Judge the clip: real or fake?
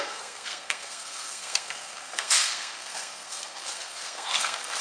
fake